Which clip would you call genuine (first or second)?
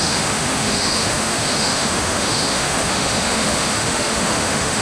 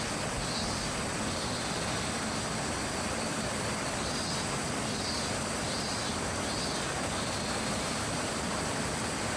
second